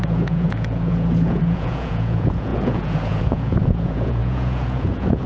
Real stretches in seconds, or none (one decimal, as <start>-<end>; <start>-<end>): none